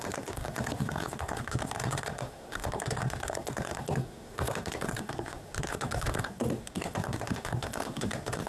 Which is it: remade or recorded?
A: remade